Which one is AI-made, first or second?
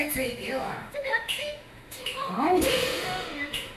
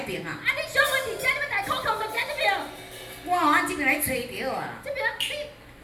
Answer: first